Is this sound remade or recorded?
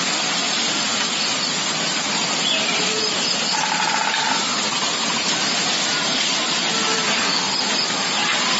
recorded